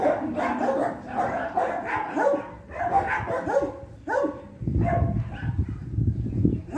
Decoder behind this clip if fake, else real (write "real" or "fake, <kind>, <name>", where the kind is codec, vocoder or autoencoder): real